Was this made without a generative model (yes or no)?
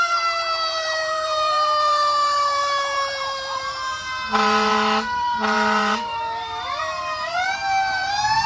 no